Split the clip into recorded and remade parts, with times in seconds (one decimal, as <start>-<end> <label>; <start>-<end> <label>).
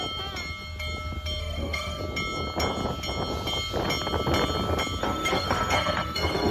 0.0-1.4 recorded; 1.4-2.0 remade; 2.0-5.0 recorded; 5.0-6.5 remade